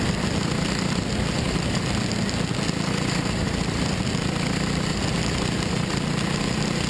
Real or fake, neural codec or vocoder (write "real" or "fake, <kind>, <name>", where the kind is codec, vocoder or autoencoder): real